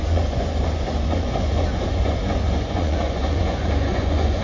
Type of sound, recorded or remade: remade